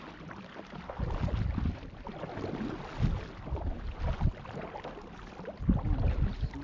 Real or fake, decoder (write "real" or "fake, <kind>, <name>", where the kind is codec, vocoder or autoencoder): real